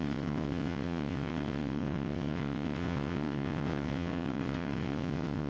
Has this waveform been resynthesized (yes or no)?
yes